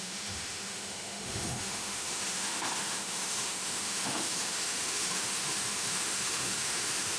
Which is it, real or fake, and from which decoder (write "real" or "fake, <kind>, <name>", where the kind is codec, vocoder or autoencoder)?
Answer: fake, autoencoder, DAC-VAE